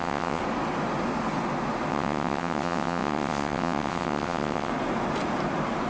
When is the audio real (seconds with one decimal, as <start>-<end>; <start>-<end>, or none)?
0.4-1.9; 4.7-5.9